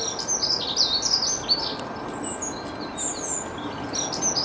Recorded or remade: recorded